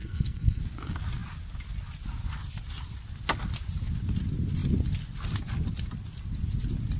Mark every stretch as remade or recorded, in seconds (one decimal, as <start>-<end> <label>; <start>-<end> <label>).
0.0-0.6 remade; 0.6-7.0 recorded